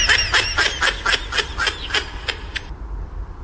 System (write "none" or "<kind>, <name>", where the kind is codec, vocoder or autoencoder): none